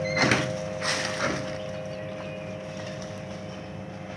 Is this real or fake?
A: real